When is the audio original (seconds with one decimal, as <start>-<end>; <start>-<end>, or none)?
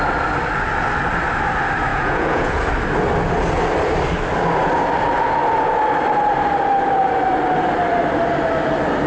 0.0-1.9; 2.7-9.1